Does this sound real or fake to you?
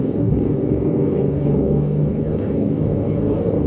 fake